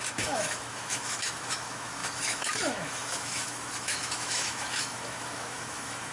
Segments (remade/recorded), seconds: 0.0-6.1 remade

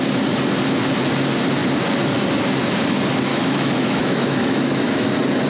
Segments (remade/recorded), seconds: 0.0-3.3 recorded; 3.3-5.1 remade; 5.1-5.5 recorded

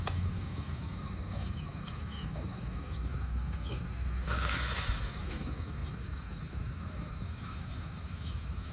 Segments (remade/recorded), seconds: 0.0-8.7 remade